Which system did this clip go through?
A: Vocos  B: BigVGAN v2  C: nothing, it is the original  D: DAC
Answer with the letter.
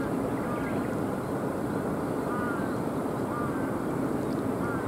B